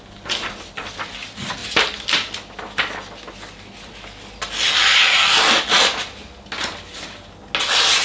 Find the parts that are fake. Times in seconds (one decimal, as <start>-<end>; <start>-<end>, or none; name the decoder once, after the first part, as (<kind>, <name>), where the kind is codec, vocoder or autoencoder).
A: none